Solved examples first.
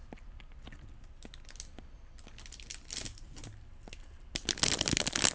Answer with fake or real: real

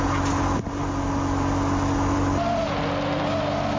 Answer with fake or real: real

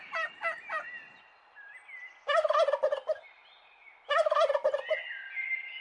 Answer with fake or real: real